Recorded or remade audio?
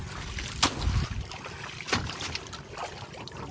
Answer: recorded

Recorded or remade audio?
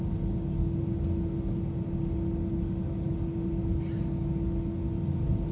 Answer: recorded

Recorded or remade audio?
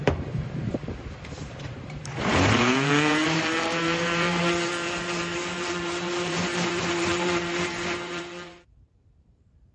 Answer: remade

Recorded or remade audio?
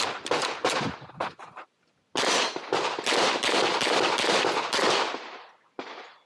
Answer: recorded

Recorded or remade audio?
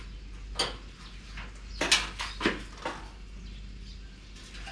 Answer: recorded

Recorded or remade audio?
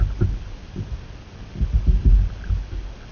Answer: recorded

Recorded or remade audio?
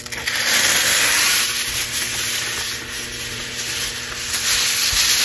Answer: recorded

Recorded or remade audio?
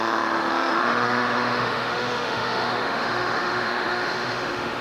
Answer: remade